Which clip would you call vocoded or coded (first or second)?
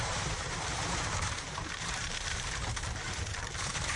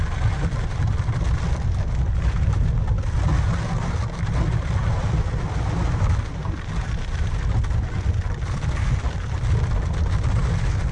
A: first